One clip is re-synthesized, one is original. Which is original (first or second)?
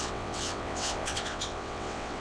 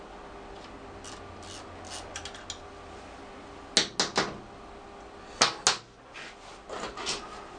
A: second